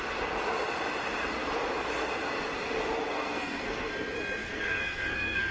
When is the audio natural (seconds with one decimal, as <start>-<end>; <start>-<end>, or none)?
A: 0.0-3.1; 3.9-4.4